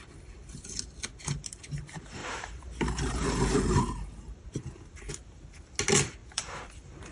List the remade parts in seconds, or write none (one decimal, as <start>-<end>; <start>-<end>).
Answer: 2.2-5.1; 6.2-7.1